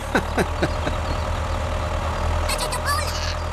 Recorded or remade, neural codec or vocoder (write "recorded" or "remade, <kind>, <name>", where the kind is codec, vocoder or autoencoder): recorded